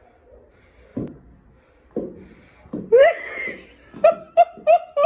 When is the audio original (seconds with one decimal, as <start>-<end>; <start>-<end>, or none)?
0.0-0.9; 3.9-5.1